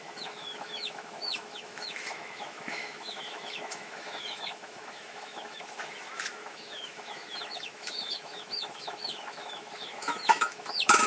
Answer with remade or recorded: remade